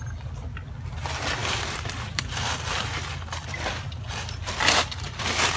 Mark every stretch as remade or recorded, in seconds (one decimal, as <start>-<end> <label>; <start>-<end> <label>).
0.0-1.4 recorded; 1.4-2.2 remade; 2.2-5.6 recorded